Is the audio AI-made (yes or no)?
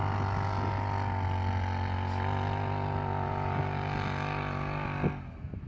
no